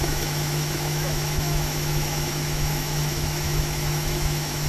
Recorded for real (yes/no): no